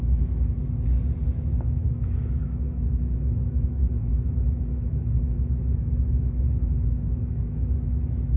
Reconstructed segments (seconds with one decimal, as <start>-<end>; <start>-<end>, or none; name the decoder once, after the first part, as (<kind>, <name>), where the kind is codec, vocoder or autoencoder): 0.0-0.6 (autoencoder, DAC-VAE); 1.3-8.4